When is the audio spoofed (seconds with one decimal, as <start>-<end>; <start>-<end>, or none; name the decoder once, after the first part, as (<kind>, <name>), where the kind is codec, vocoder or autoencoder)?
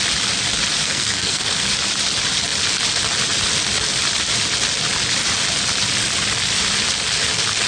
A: 0.8-1.7 (codec, SNAC)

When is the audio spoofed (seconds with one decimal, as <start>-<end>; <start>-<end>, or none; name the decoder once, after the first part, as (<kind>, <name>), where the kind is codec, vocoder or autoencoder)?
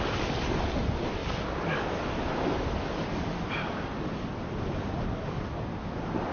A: none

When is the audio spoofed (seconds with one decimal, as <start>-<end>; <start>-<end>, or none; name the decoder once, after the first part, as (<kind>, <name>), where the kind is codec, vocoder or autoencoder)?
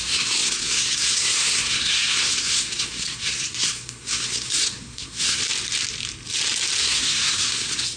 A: 0.0-5.4 (codec, SNAC); 6.8-8.0